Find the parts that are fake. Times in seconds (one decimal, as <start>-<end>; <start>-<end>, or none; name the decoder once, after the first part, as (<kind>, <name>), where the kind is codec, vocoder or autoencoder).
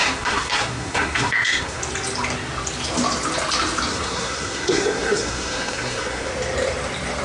0.0-1.8 (codec, SNAC); 3.9-6.3